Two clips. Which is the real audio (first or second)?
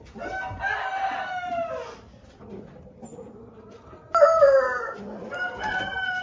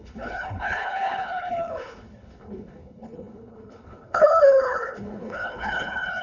first